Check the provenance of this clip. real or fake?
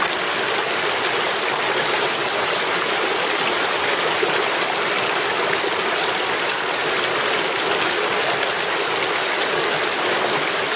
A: real